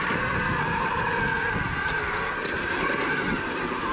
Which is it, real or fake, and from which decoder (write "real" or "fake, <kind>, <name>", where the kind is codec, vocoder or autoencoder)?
real